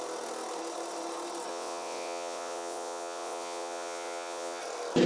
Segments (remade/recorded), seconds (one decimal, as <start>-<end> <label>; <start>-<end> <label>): 0.0-1.5 recorded; 1.5-4.6 remade; 4.6-5.1 recorded